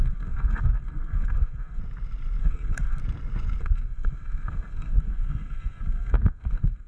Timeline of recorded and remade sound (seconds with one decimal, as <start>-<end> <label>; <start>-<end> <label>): 0.0-1.8 remade; 1.8-2.4 recorded; 2.4-3.0 remade; 3.0-3.6 recorded; 3.6-6.9 remade